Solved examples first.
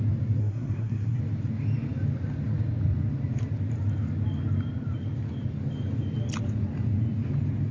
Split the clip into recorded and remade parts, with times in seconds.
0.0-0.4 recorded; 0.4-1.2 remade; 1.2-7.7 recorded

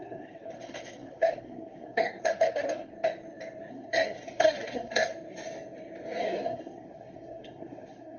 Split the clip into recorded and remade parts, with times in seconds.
0.0-2.9 remade; 2.9-3.7 recorded; 3.7-5.1 remade; 5.1-6.2 recorded; 6.2-8.2 remade

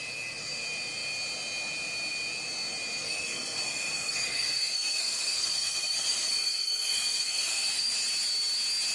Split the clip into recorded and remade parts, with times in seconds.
0.0-3.0 recorded; 3.0-7.9 remade; 7.9-8.9 recorded

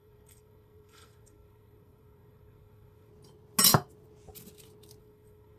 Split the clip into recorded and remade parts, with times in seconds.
0.0-3.1 remade; 3.1-5.0 recorded; 5.0-5.6 remade

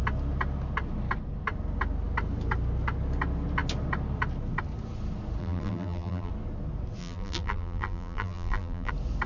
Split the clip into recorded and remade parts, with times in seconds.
0.0-5.4 recorded; 5.4-6.3 remade; 6.3-7.0 recorded; 7.0-8.9 remade; 8.9-9.3 recorded

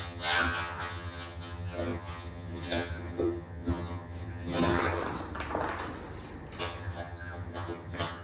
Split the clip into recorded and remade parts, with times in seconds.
0.0-5.0 remade; 5.0-6.6 recorded; 6.6-8.2 remade